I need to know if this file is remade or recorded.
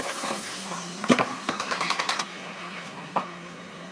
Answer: remade